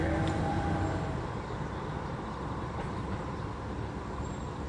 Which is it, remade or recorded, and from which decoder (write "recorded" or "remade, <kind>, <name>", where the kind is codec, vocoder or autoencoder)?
remade, vocoder, BigVGAN v2